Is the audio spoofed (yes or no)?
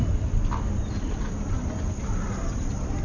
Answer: yes